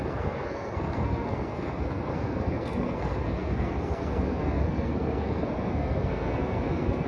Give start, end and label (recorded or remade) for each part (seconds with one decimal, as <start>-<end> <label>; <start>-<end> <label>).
0.0-7.1 remade